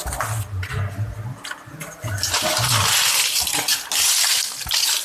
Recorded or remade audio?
recorded